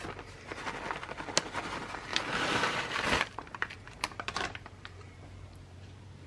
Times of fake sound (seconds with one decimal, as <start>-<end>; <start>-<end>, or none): 2.1-6.3